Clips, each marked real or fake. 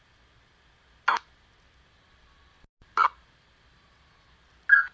real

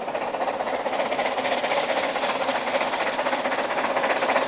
fake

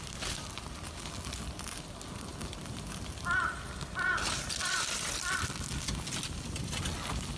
real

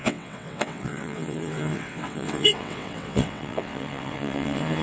fake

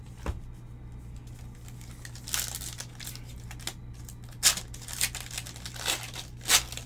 real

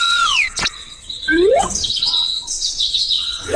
fake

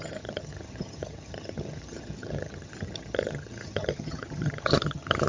fake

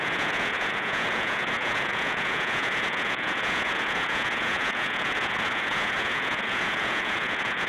fake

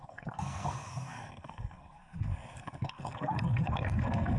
fake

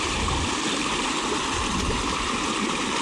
real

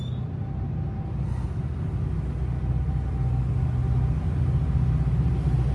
real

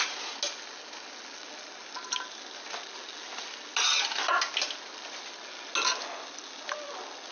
real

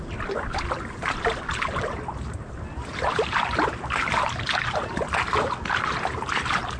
real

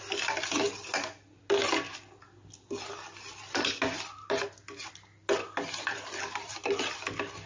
real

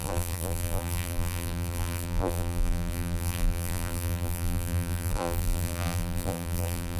fake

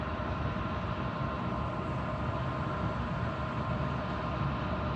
real